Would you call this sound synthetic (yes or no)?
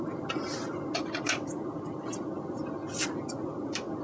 no